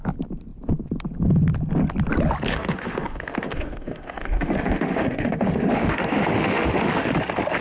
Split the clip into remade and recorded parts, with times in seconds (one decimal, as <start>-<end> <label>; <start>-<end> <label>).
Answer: 0.0-2.5 recorded; 2.5-7.1 remade; 7.1-7.6 recorded